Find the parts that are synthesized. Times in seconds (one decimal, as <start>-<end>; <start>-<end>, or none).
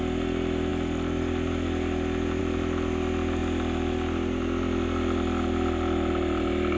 none